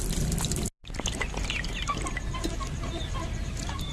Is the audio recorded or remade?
recorded